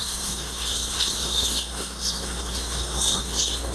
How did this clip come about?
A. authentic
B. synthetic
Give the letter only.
B